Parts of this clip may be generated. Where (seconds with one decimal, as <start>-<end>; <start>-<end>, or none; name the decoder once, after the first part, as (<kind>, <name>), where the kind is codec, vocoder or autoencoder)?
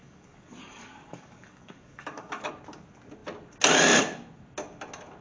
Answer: 0.0-2.5 (codec, DAC)